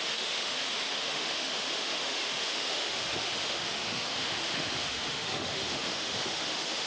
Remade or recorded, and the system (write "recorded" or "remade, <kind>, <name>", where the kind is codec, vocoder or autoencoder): remade, autoencoder, DAC-VAE